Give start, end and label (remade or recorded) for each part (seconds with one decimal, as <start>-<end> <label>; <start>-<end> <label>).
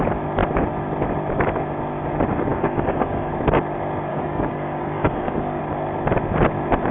0.0-2.5 recorded; 2.5-3.3 remade; 3.3-4.1 recorded; 4.1-5.6 remade; 5.6-6.9 recorded